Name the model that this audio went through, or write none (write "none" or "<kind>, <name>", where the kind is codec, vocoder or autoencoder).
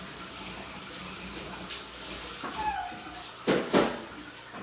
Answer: none